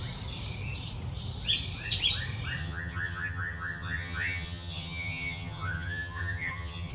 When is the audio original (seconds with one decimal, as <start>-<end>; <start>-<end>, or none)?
0.0-2.6